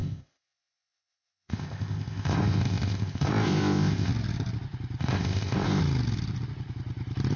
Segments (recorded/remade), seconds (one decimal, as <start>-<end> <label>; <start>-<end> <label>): 0.0-4.1 remade; 4.1-5.0 recorded; 5.0-5.8 remade; 5.8-7.4 recorded